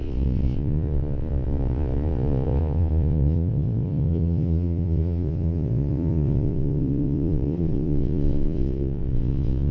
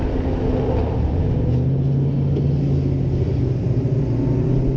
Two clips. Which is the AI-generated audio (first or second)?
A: first